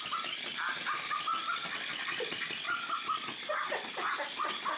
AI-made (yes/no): no